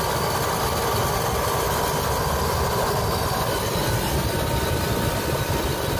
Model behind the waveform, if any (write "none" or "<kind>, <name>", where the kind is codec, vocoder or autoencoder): none